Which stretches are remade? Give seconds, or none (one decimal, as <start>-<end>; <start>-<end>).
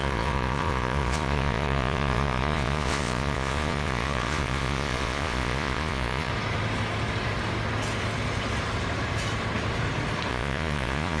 0.0-6.3; 10.3-11.2